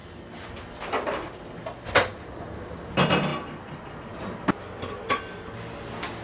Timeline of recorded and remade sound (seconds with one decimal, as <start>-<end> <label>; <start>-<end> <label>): 0.0-6.2 recorded